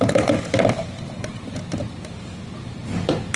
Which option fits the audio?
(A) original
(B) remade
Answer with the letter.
A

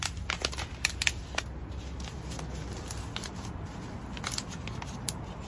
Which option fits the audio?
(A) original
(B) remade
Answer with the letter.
A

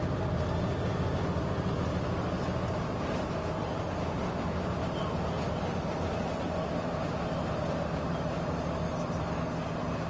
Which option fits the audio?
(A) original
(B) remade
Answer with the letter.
A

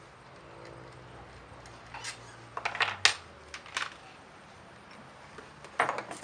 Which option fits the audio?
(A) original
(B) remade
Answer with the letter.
A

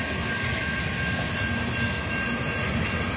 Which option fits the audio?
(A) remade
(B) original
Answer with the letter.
B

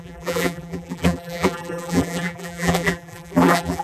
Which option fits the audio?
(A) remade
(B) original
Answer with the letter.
A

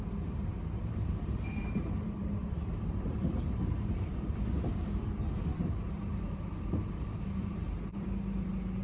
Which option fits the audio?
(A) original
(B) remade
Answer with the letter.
B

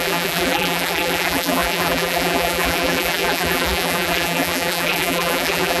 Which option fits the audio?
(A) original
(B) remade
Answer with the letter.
B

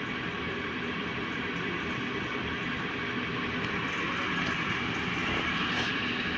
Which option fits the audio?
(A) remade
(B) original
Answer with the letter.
B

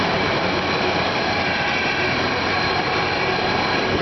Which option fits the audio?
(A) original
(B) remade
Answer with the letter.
B